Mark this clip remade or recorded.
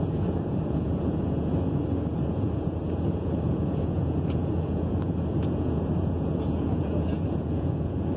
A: remade